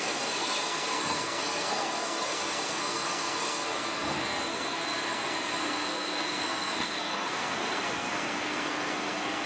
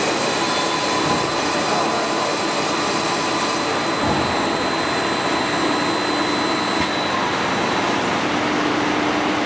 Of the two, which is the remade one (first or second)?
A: first